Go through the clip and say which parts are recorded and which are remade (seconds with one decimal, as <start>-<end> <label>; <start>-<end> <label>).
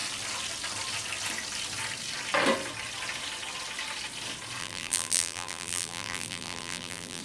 0.0-4.6 recorded; 4.6-7.2 remade